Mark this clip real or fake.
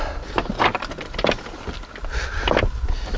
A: real